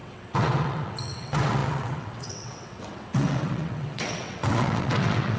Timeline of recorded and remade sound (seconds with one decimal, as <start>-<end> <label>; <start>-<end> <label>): 0.0-5.4 remade